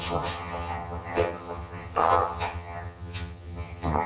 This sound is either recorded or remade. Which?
remade